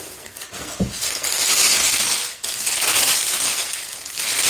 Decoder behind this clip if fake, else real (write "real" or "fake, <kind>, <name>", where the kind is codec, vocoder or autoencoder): fake, codec, SNAC